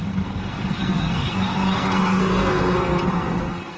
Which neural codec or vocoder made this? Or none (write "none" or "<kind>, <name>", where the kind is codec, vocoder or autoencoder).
codec, SNAC